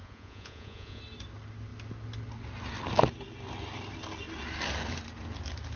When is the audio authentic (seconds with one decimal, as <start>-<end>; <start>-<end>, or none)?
1.0-5.8